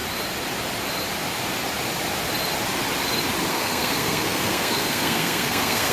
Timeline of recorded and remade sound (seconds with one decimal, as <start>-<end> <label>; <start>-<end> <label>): 0.0-3.5 recorded; 3.5-5.9 remade